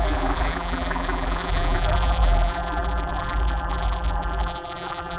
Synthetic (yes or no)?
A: yes